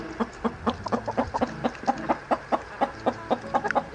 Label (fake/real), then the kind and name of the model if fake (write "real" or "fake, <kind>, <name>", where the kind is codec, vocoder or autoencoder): real